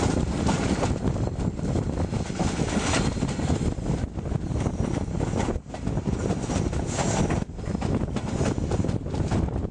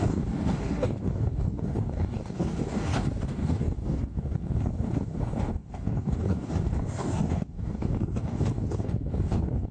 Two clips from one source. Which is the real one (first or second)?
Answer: first